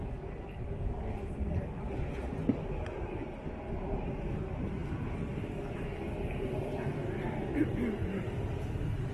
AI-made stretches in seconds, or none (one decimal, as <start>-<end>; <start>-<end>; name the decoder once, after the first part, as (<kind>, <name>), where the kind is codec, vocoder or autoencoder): none

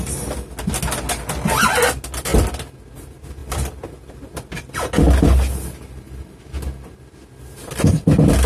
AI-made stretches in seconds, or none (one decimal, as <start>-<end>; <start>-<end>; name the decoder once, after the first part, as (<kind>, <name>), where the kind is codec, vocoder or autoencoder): none

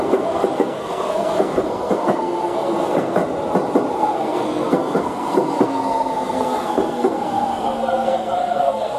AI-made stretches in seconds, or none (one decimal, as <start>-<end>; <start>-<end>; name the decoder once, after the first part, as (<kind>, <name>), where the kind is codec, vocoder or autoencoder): 0.0-3.2 (codec, SNAC); 3.9-9.0